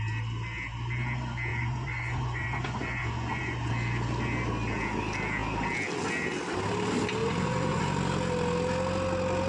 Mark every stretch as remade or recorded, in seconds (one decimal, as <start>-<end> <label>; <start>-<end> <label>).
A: 0.0-1.5 recorded; 1.5-3.7 remade; 3.7-7.2 recorded; 7.2-7.8 remade; 7.8-9.5 recorded